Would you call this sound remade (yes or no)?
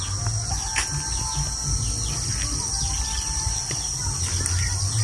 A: no